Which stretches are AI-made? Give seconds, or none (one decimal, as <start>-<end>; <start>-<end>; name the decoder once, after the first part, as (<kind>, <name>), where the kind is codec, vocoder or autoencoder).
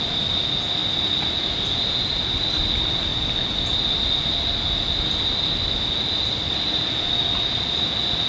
none